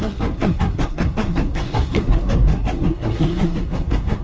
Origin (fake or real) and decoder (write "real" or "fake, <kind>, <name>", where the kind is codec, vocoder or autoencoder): fake, codec, SNAC